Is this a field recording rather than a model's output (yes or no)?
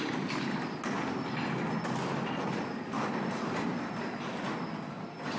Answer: yes